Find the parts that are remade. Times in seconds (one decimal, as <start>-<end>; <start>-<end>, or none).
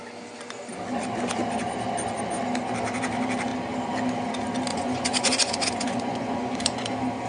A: 4.7-6.8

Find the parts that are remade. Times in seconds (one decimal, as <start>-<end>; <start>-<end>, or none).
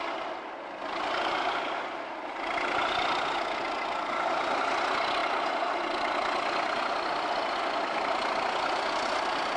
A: none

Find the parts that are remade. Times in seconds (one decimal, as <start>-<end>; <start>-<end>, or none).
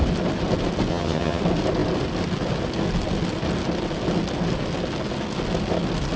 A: 0.9-1.4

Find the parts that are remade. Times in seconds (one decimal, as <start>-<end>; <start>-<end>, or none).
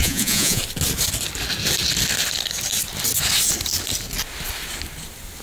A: 0.0-0.6